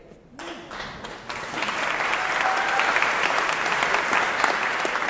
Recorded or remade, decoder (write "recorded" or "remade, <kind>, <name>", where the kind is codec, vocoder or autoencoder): recorded